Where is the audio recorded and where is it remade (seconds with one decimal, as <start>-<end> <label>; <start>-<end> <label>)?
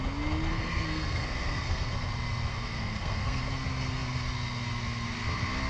0.0-0.5 recorded; 0.5-1.9 remade; 1.9-2.5 recorded; 2.5-3.4 remade; 3.4-5.7 recorded